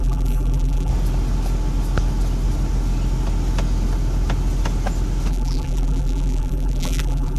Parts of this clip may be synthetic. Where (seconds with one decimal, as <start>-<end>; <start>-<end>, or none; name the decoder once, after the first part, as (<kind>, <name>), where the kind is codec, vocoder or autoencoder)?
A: 0.0-0.9 (vocoder, BigVGAN v2); 5.3-7.4